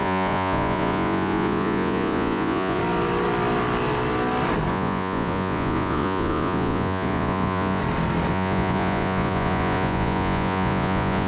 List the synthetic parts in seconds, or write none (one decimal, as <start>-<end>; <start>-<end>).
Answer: 0.0-2.8; 4.7-7.8; 8.3-11.3